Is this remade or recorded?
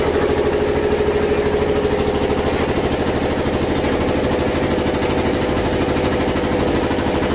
recorded